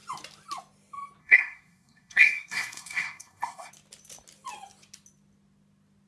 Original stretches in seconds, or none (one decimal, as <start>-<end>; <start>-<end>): 0.0-1.2; 3.7-6.1